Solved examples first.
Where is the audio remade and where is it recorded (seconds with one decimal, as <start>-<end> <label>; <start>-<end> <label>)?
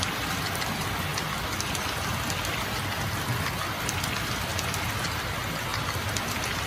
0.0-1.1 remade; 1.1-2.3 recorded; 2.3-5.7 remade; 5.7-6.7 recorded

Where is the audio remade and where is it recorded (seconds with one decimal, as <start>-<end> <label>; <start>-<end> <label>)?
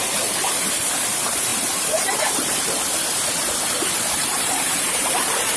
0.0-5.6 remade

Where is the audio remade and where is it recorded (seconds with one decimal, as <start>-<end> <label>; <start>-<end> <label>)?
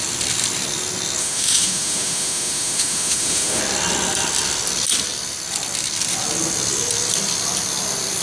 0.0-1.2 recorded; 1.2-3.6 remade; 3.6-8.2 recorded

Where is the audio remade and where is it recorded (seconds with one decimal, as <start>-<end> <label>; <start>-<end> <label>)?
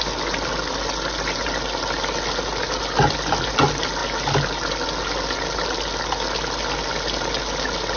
0.0-8.0 recorded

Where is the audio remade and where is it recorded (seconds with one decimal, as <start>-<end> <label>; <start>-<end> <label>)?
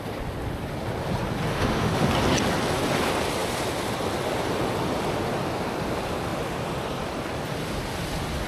0.0-1.5 recorded; 1.5-2.1 remade; 2.1-8.5 recorded